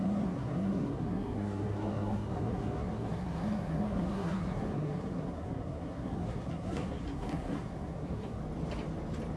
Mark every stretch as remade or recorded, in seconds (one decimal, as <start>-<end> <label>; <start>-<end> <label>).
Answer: 0.0-8.4 remade; 8.4-9.4 recorded